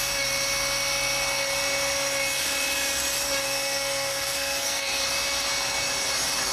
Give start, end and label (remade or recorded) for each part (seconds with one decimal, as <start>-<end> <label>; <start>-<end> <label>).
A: 0.0-3.4 recorded; 3.4-5.0 remade; 5.0-6.5 recorded